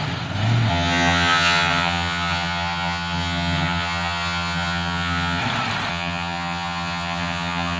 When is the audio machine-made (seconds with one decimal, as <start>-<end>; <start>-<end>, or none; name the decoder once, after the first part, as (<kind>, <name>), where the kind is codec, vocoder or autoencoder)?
0.7-5.4 (vocoder, HiFi-GAN); 5.9-7.8